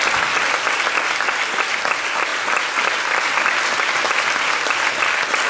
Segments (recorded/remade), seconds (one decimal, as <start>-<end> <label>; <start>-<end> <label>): 0.0-5.5 recorded